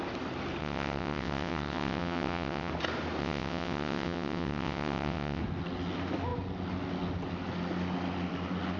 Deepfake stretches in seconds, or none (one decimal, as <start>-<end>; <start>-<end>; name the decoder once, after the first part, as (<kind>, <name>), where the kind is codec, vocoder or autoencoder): 0.6-2.7 (vocoder, WaveNeXt); 3.2-5.4